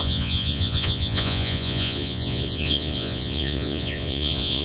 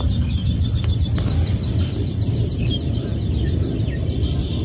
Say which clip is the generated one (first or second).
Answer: first